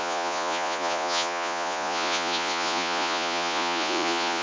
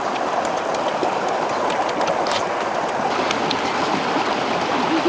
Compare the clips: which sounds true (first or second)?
second